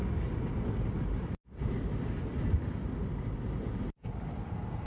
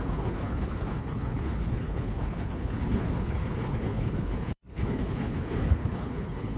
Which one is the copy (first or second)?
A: second